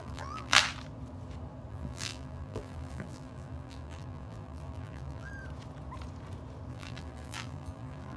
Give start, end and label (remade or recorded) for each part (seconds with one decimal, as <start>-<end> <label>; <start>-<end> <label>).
0.0-0.6 remade; 0.6-1.7 recorded; 1.7-5.3 remade; 5.3-6.7 recorded; 6.7-8.2 remade